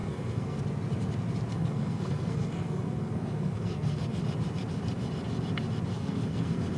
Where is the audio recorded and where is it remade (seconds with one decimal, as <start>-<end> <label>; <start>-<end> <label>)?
0.0-0.6 remade; 0.6-1.5 recorded; 1.5-4.2 remade; 4.2-5.9 recorded; 5.9-6.8 remade